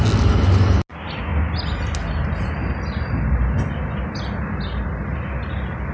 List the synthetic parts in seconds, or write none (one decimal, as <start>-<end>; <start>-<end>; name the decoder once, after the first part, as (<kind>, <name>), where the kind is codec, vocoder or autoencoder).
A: none